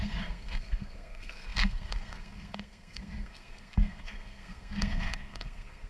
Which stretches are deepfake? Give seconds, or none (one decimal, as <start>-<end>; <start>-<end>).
0.0-5.9